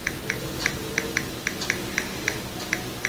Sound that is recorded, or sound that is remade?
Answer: recorded